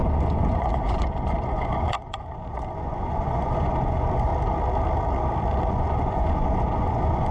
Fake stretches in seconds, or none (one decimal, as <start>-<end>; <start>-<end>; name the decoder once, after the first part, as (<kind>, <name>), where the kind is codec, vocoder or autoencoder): 0.0-4.3 (vocoder, Vocos); 5.7-7.3